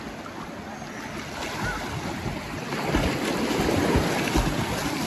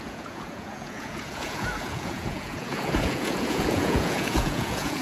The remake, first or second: second